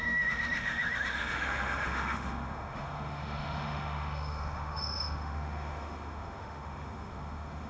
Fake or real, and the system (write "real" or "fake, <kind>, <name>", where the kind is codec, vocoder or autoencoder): fake, autoencoder, DAC-VAE